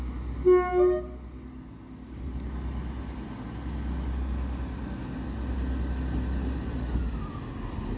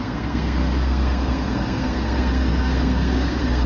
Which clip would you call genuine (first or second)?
first